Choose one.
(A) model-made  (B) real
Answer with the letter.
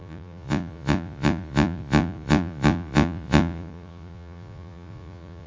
A